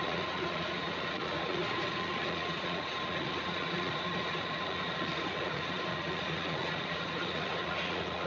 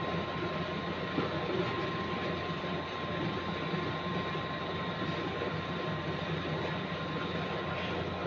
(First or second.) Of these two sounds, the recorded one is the second